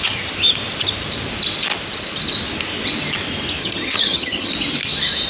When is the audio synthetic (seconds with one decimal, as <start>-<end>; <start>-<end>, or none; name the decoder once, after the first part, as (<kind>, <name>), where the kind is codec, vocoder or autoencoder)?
3.6-4.5 (vocoder, HiFi-GAN)